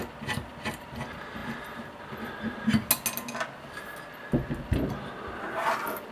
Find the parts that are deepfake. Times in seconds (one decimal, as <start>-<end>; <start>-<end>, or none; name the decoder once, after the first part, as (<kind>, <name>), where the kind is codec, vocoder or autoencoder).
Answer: none